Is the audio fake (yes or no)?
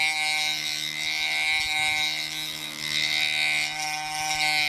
no